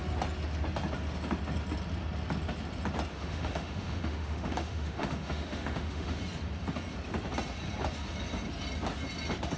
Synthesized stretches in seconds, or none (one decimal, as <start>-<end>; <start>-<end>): 3.1-6.2